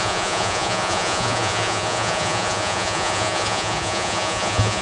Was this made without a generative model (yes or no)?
no